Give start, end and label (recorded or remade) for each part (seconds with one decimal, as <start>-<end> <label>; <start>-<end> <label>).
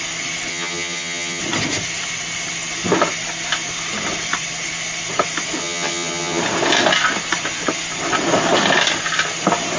0.0-0.5 recorded; 0.5-1.4 remade; 1.4-5.6 recorded; 5.6-6.4 remade; 6.4-9.8 recorded